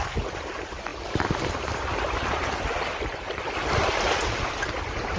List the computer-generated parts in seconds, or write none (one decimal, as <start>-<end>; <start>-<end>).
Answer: none